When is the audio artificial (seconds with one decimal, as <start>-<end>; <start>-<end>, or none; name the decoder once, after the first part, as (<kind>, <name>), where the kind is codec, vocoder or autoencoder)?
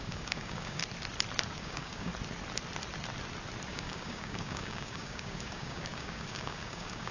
0.0-0.8 (codec, DAC); 1.6-2.1; 3.7-7.1